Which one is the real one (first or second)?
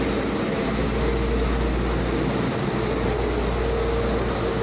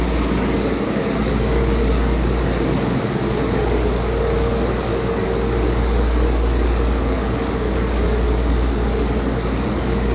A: first